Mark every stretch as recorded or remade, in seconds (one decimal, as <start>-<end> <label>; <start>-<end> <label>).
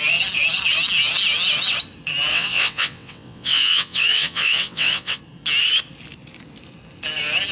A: 0.0-2.3 recorded; 2.3-5.2 remade; 5.2-7.5 recorded